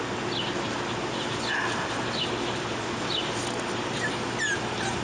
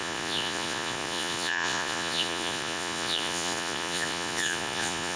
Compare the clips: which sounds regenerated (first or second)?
second